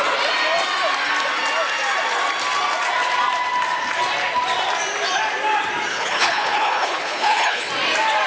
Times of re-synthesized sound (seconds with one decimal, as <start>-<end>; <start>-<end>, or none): 5.9-7.7